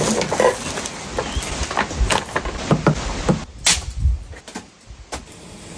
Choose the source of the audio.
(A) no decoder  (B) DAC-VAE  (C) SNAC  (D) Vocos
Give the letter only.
A